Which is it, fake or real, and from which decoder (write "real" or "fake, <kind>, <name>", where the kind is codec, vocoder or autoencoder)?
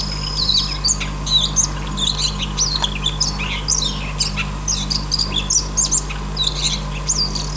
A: real